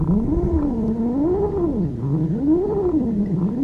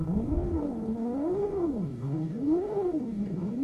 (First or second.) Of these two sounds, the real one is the first